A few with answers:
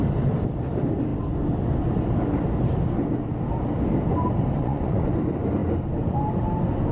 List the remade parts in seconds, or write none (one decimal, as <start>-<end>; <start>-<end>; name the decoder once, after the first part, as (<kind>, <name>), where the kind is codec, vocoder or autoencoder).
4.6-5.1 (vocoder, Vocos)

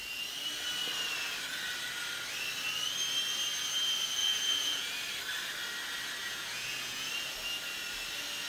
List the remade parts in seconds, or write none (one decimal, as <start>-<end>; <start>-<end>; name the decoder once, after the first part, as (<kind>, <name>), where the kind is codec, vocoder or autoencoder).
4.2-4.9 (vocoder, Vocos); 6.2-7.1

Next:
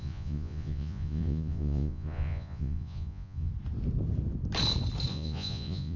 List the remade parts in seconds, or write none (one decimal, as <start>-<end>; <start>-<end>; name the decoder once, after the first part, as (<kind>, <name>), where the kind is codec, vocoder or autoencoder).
0.0-3.5 (vocoder, Vocos); 5.1-6.0

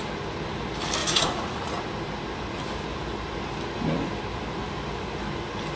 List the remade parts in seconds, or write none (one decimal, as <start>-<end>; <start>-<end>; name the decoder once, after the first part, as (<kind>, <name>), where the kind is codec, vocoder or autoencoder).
1.0-1.8 (vocoder, Vocos)

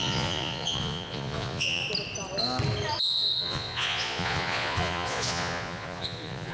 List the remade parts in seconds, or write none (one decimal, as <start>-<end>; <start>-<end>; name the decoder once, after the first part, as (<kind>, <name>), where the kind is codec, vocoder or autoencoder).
0.0-1.8 (vocoder, Vocos); 3.0-6.5

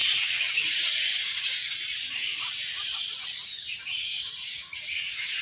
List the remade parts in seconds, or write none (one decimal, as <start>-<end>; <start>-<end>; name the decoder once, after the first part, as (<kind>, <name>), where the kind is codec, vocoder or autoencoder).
0.0-2.3 (vocoder, Vocos); 3.1-5.4